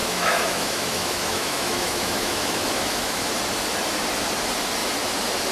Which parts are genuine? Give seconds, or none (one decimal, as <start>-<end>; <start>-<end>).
3.3-5.5